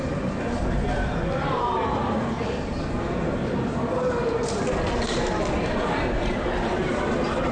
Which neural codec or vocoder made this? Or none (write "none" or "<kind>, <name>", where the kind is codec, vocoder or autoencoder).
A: none